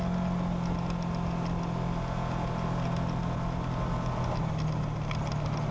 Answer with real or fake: real